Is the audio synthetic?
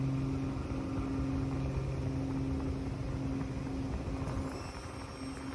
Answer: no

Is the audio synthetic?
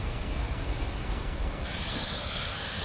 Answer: yes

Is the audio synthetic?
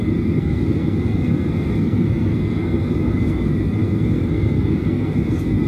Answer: yes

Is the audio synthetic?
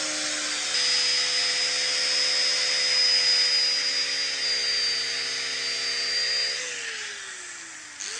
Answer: no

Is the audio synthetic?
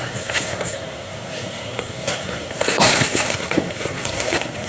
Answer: yes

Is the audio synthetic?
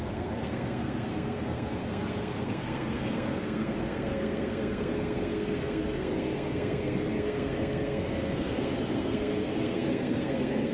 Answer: yes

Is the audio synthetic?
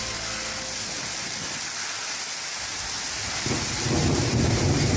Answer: no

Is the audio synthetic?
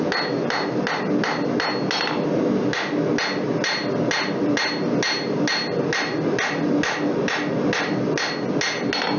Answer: no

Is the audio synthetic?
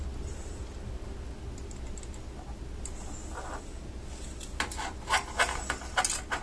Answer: no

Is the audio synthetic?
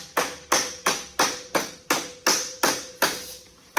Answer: no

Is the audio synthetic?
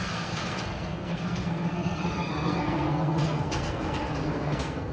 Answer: yes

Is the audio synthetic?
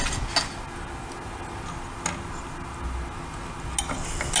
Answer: no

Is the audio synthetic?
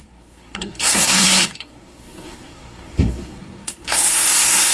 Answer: yes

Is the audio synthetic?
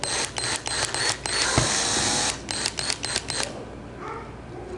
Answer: no